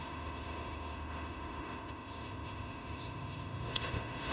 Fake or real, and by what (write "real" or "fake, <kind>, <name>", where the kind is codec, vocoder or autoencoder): fake, autoencoder, DAC-VAE